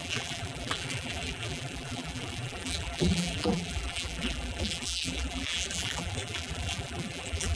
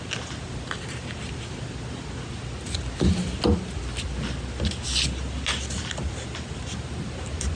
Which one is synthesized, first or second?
first